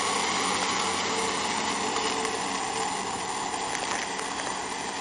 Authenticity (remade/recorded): recorded